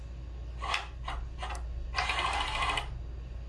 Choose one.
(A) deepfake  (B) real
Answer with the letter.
B